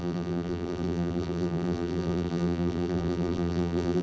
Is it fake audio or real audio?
fake